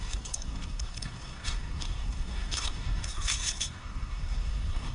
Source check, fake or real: fake